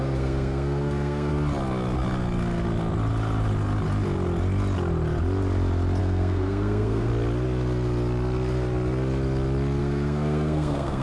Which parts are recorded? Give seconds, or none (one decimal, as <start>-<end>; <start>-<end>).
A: 1.3-6.0; 7.1-9.8